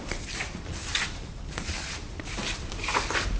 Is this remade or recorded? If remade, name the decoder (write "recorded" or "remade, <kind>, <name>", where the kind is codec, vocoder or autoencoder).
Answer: recorded